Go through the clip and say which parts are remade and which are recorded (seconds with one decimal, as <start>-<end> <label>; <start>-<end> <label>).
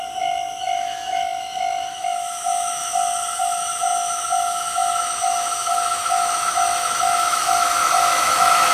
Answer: 0.0-2.8 remade; 2.8-3.4 recorded; 3.4-8.7 remade